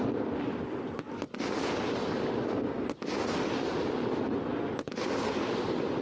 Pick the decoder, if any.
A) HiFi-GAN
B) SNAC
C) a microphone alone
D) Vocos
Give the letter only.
C